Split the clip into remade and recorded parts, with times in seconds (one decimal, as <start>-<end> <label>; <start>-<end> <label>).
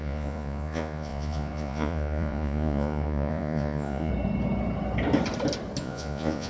0.0-4.1 remade; 4.1-5.8 recorded; 5.8-6.5 remade